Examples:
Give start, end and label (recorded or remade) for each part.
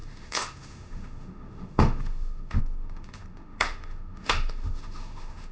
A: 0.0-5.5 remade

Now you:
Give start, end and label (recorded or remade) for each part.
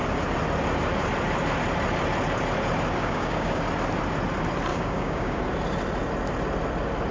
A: 0.0-3.0 recorded; 3.0-3.6 remade; 3.6-4.7 recorded; 4.7-5.4 remade; 5.4-7.1 recorded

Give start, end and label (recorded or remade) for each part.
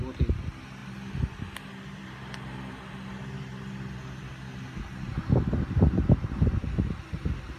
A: 0.0-7.6 recorded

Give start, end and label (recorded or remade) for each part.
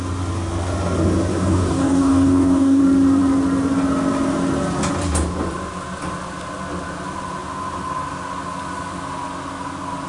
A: 0.0-1.3 recorded; 1.3-2.8 remade; 2.8-10.1 recorded